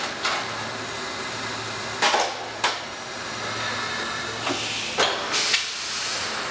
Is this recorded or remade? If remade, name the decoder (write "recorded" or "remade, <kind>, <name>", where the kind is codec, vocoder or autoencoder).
recorded